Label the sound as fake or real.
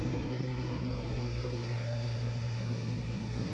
fake